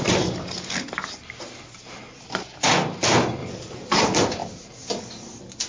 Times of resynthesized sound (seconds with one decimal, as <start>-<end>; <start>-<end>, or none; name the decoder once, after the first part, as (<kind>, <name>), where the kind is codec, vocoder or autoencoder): none